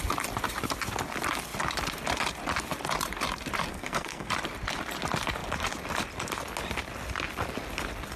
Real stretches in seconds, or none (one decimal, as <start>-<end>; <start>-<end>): 0.0-3.7; 4.3-8.2